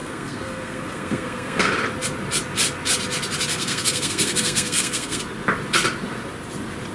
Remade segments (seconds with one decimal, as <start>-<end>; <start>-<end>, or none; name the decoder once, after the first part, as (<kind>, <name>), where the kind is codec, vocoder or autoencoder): 0.0-1.7 (codec, SNAC); 3.5-5.2